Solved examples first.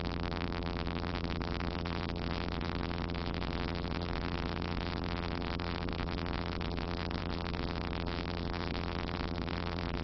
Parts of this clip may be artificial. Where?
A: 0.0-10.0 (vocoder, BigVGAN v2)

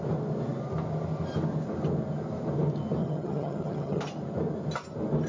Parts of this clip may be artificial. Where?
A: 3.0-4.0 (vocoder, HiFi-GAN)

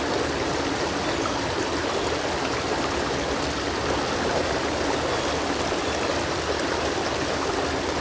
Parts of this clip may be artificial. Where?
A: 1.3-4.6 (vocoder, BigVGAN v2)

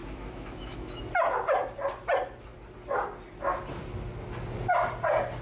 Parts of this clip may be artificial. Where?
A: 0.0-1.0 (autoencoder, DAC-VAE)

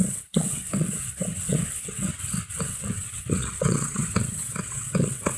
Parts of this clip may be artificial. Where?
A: 0.0-2.1 (vocoder, WaveNeXt); 2.6-5.4